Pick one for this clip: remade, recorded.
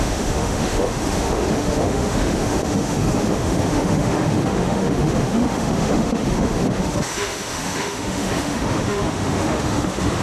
remade